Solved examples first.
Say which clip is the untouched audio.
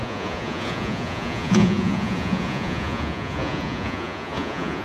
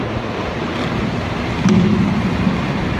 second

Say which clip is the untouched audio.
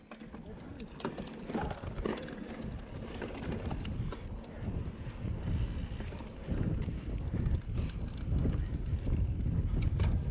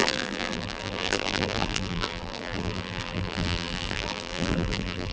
first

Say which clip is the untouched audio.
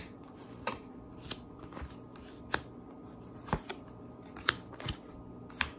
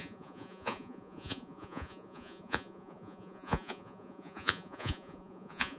first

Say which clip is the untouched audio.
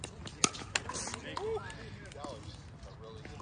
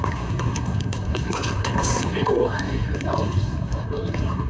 first